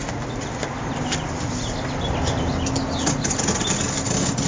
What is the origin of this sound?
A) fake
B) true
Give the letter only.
B